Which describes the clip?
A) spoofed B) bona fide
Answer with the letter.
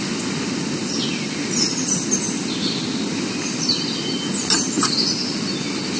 B